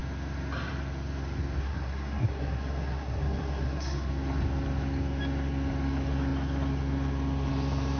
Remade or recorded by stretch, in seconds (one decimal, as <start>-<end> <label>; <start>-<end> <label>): 0.0-1.6 recorded; 1.6-4.1 remade; 4.1-8.0 recorded